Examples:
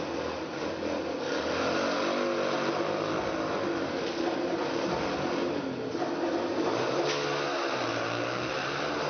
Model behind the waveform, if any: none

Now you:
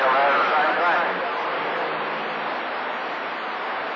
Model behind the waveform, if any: none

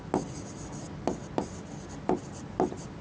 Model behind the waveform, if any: none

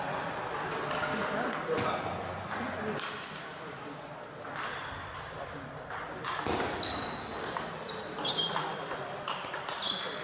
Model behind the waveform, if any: none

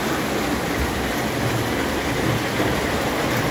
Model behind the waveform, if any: none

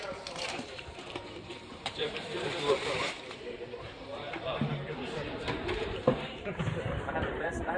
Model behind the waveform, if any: vocoder, BigVGAN v2